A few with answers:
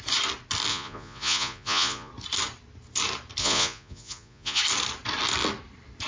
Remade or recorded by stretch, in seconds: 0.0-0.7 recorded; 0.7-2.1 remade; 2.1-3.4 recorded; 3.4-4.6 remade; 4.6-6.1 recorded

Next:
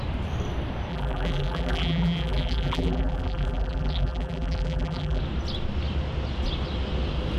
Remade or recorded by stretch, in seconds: 0.0-0.9 recorded; 0.9-5.2 remade; 5.2-7.4 recorded

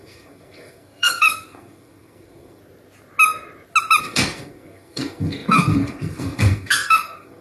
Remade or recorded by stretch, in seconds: 0.0-2.6 remade; 2.6-4.0 recorded; 4.0-7.4 remade

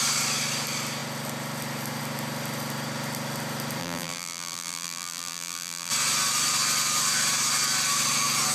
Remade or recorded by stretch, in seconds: 0.0-3.8 recorded; 3.8-5.9 remade; 5.9-8.5 recorded

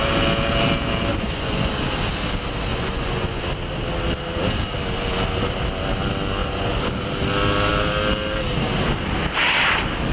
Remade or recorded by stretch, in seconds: 0.0-1.1 recorded; 1.1-1.7 remade; 1.7-2.7 recorded; 2.7-3.4 remade; 3.4-6.4 recorded; 6.4-6.9 remade; 6.9-10.1 recorded